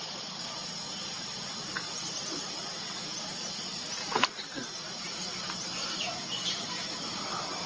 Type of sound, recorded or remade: recorded